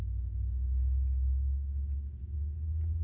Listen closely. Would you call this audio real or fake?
real